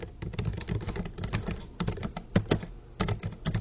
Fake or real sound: real